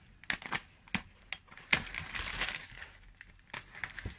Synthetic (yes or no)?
no